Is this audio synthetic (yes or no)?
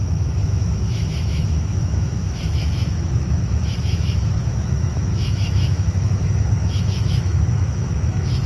yes